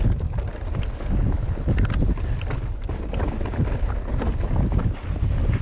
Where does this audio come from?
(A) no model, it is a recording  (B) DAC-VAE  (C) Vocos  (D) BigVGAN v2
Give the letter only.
A